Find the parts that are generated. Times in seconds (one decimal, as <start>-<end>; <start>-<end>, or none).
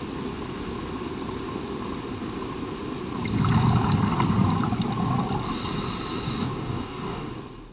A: 6.4-7.3